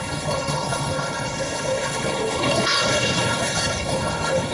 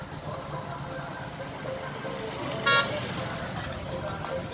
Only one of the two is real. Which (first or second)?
second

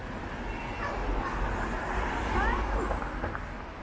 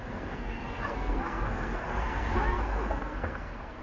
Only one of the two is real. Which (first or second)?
first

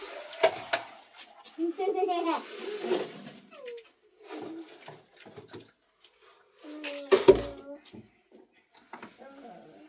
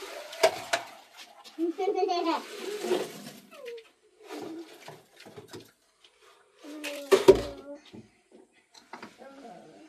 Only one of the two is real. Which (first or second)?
first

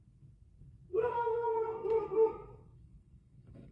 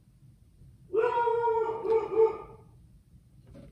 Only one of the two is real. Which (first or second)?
second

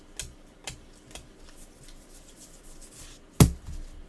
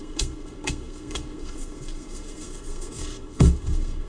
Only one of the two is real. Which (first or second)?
first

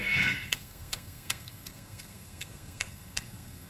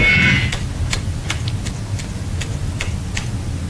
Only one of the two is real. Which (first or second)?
second